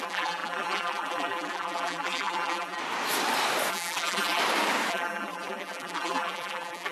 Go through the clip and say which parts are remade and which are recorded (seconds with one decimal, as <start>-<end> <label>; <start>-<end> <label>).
0.0-2.8 remade; 2.8-3.7 recorded; 3.7-4.4 remade; 4.4-4.9 recorded; 4.9-6.9 remade